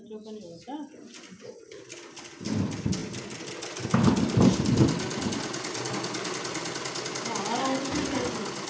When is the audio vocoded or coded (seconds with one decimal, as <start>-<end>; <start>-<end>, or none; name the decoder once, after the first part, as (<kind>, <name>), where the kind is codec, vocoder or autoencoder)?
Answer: none